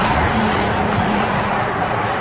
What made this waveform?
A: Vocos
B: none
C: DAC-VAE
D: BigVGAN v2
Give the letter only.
A